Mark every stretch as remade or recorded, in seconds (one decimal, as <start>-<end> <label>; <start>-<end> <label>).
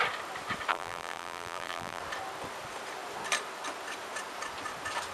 0.0-0.7 recorded; 0.7-2.0 remade; 2.0-5.1 recorded